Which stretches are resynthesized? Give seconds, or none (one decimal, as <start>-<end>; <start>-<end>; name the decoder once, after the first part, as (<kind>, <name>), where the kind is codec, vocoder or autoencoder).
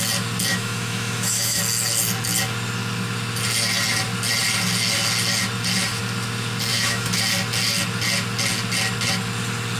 0.5-1.6 (autoencoder, DAC-VAE); 6.7-7.2